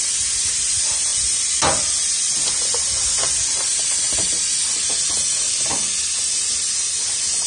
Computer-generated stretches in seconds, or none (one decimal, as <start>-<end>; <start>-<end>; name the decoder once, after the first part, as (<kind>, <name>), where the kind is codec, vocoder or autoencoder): none